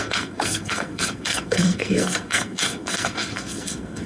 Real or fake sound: fake